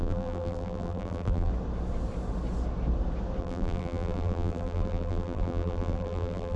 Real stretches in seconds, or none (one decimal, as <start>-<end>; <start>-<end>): 1.5-3.4